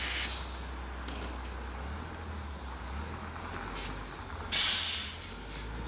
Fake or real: real